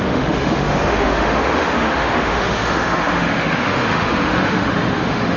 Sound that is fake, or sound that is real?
fake